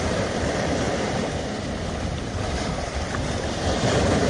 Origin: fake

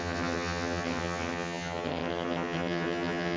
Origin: fake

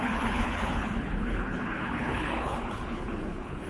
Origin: fake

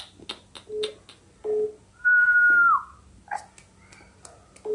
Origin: real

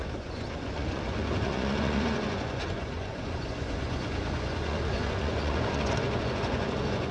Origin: fake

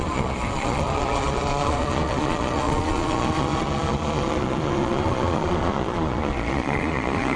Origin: fake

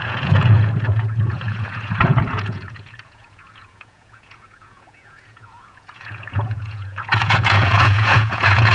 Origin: fake